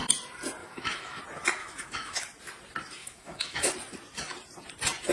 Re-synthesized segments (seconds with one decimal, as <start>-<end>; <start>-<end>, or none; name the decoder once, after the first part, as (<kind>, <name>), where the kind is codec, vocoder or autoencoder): 0.6-1.2 (autoencoder, DAC-VAE); 1.6-2.2; 3.0-3.7